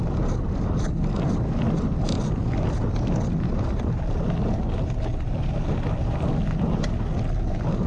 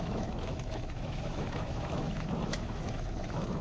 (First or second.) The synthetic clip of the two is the second